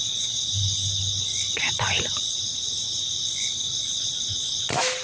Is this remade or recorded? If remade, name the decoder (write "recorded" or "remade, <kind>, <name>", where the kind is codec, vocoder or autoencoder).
recorded